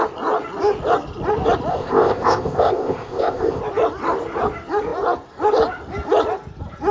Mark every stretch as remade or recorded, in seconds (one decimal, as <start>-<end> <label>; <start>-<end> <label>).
0.0-1.7 recorded; 1.7-3.6 remade; 3.6-6.9 recorded